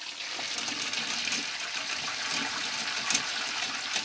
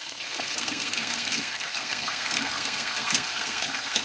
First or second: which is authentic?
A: first